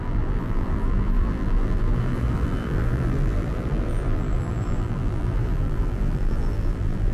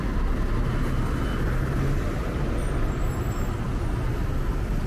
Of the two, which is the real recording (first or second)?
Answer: second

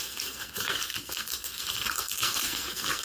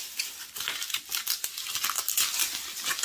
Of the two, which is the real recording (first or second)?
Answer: second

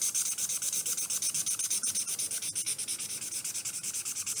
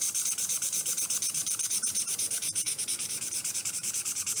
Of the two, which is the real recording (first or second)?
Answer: first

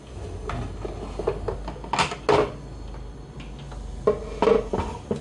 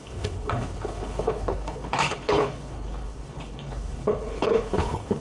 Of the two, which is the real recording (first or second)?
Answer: first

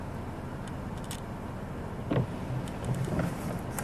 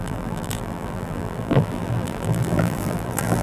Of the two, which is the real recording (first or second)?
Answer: first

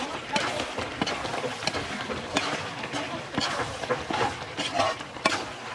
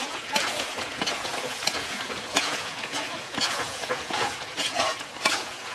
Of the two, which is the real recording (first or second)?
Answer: first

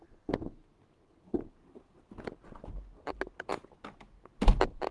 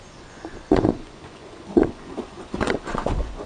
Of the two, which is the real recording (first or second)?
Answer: first